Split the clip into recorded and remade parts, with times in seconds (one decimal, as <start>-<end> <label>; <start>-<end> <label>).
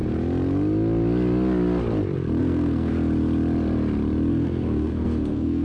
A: 0.0-2.4 recorded; 2.4-2.9 remade; 2.9-4.3 recorded; 4.3-5.6 remade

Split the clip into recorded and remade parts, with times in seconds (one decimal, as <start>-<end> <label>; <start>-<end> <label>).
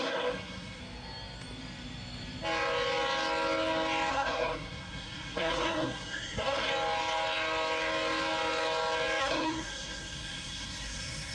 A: 0.0-0.8 remade; 0.8-4.1 recorded; 4.1-6.7 remade; 6.7-9.2 recorded; 9.2-11.3 remade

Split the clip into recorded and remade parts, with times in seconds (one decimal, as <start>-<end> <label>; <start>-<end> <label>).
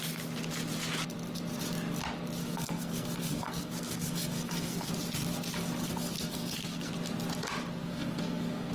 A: 0.0-2.4 recorded; 2.4-4.9 remade; 4.9-5.8 recorded; 5.8-6.9 remade; 6.9-7.8 recorded; 7.8-8.7 remade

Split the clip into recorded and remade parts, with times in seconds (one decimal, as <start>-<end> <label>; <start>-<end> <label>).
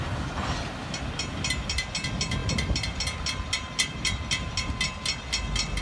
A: 0.0-5.8 recorded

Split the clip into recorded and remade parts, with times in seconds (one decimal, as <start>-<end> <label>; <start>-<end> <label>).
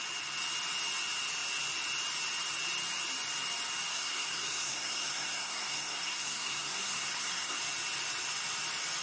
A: 0.0-3.9 recorded; 3.9-7.6 remade; 7.6-9.0 recorded